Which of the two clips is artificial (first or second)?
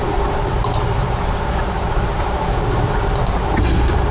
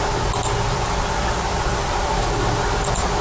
first